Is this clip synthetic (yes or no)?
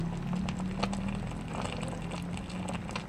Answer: no